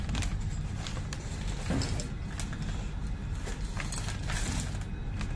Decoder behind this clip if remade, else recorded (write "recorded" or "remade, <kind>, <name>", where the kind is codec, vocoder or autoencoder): recorded